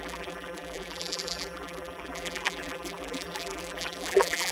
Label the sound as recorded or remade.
remade